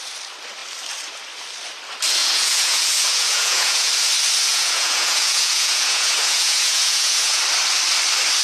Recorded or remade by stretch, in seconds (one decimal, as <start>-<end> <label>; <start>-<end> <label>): 0.0-2.2 recorded; 2.2-3.9 remade; 3.9-4.5 recorded; 4.5-7.4 remade; 7.4-8.4 recorded